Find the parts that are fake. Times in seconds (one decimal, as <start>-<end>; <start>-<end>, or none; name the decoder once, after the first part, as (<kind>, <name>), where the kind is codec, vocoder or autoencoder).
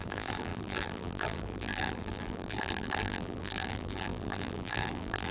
0.0-5.3 (vocoder, BigVGAN v2)